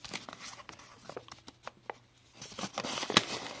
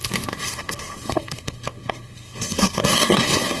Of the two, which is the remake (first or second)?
second